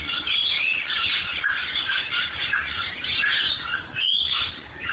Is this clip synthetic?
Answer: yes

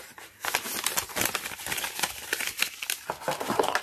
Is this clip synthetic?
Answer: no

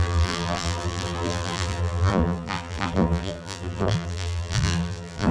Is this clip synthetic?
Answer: yes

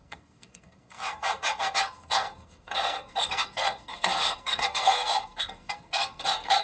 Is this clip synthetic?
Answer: yes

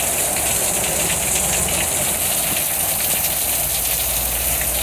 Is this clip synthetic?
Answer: no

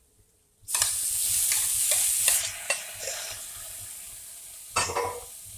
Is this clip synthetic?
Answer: no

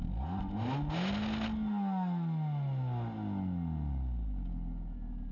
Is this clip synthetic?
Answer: no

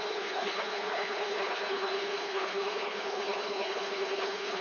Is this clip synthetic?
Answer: yes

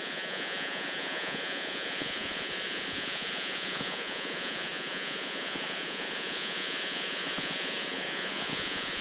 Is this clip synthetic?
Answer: yes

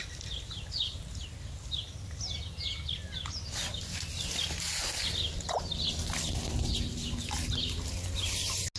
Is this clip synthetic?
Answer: no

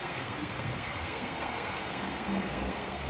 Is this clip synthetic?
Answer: yes